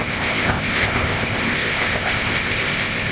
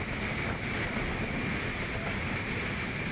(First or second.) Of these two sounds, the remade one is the first